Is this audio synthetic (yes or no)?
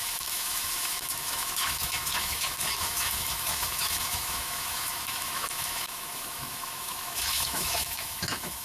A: yes